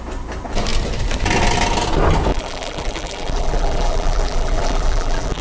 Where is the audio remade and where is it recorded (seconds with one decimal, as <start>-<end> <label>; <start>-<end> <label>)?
0.0-2.3 recorded; 2.3-5.4 remade